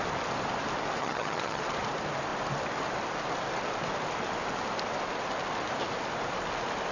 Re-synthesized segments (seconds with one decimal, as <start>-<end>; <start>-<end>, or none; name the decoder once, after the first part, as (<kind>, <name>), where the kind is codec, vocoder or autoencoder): 1.0-1.6 (vocoder, HiFi-GAN)